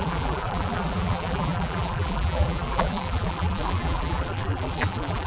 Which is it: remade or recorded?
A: remade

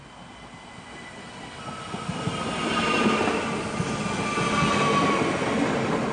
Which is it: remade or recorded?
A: recorded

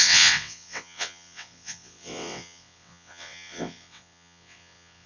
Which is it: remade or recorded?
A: remade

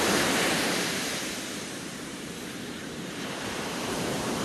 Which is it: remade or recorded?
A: remade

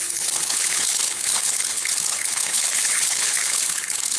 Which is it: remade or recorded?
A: remade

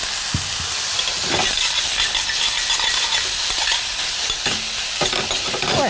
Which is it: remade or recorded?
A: recorded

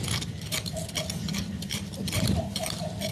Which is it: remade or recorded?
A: remade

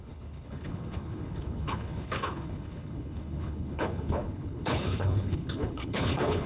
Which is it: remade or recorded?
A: remade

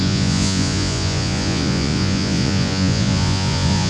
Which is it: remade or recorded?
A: remade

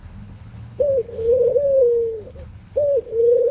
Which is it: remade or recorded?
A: remade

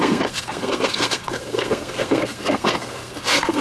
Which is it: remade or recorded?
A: remade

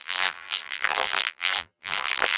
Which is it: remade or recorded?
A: remade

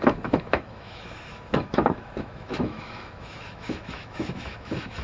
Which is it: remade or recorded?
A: remade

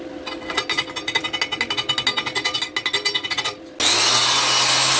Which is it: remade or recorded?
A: recorded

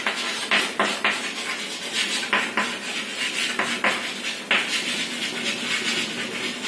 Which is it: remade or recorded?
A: recorded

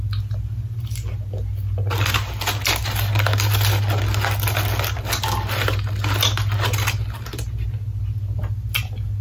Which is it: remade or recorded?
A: recorded